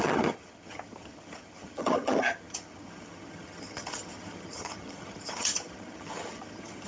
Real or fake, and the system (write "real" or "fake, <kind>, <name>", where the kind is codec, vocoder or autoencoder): fake, vocoder, HiFi-GAN